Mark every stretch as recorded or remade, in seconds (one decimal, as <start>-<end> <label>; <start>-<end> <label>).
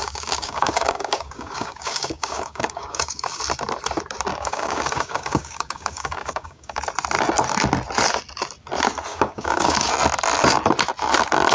0.0-3.4 remade; 3.4-4.3 recorded; 4.3-6.8 remade; 6.8-9.1 recorded; 9.1-9.9 remade; 9.9-11.5 recorded